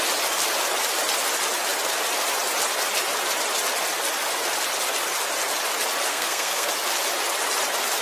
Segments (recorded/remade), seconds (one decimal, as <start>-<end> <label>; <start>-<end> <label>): 0.0-6.1 recorded; 6.1-6.7 remade; 6.7-8.0 recorded